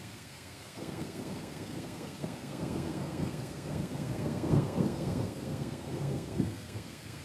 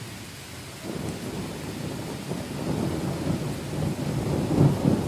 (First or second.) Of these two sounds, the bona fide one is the second